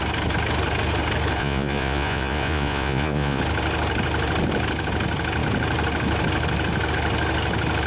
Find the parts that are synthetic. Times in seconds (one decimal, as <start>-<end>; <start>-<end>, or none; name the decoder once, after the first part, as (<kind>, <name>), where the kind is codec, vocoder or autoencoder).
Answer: 1.4-3.4 (vocoder, Vocos)